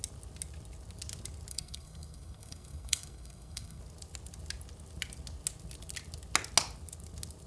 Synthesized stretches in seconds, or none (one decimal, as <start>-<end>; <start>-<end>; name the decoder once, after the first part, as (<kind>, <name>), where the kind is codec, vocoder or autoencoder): 1.5-3.8 (codec, SNAC)